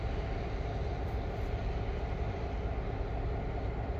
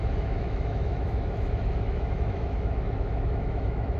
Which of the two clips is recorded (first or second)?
first